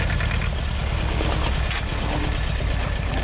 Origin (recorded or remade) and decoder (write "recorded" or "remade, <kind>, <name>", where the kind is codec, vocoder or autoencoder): recorded